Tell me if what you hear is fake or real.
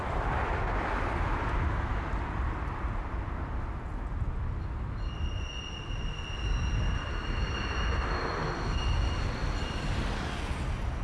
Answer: real